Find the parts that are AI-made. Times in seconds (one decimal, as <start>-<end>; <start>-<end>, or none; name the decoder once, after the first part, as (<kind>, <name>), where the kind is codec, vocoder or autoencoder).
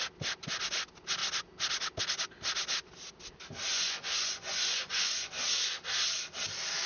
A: 3.7-5.3 (vocoder, Vocos)